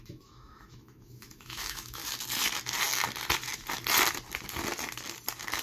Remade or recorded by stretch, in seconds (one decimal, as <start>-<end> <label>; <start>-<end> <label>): 0.0-2.0 remade; 2.0-5.6 recorded